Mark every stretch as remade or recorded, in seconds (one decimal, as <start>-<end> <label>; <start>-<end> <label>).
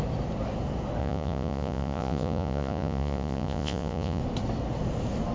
0.0-1.0 recorded; 1.0-4.2 remade; 4.2-5.3 recorded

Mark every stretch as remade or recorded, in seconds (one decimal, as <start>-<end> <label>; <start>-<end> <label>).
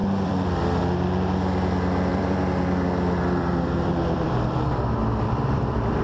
0.0-0.8 remade; 0.8-2.1 recorded; 2.1-4.6 remade; 4.6-5.0 recorded; 5.0-6.0 remade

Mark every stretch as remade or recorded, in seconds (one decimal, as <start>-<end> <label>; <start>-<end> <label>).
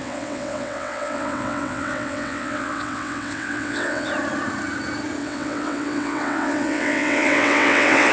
0.0-4.1 remade; 4.1-5.2 recorded; 5.2-8.1 remade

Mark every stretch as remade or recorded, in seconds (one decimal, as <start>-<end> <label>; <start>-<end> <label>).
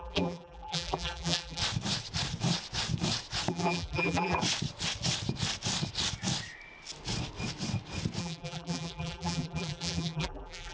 0.0-1.6 remade; 1.6-3.5 recorded; 3.5-4.4 remade; 4.4-8.2 recorded; 8.2-10.7 remade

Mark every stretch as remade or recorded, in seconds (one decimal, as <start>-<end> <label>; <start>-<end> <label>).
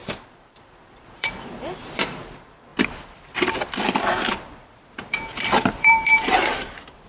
0.0-2.7 remade; 2.7-4.3 recorded; 4.3-7.1 remade